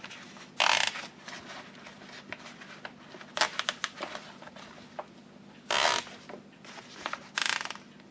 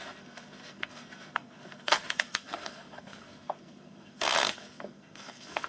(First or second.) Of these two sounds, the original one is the first